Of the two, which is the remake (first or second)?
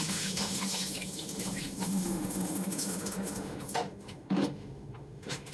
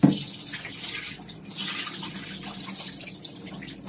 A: first